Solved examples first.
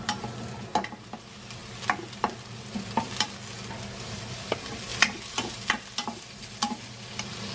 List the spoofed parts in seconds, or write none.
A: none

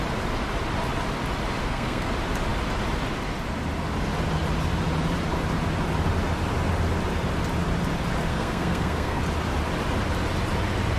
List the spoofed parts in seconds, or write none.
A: 1.6-2.1; 8.3-9.2

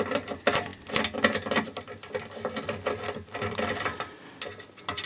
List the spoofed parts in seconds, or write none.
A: none

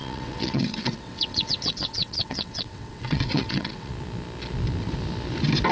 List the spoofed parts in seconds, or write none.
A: 0.0-3.9

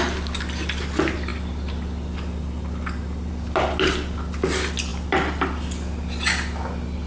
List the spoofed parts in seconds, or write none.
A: none

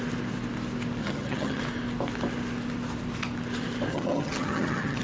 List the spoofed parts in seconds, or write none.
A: 1.0-1.6; 3.9-5.0